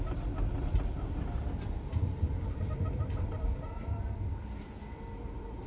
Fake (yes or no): yes